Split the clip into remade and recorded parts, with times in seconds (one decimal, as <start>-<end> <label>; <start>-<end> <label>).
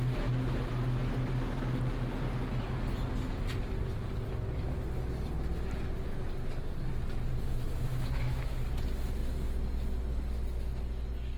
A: 0.0-7.9 recorded; 7.9-8.6 remade; 8.6-11.4 recorded